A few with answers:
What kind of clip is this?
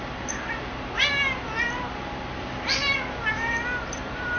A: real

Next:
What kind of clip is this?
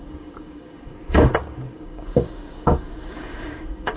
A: fake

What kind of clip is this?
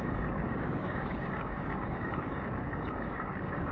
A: fake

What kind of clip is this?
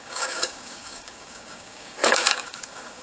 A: fake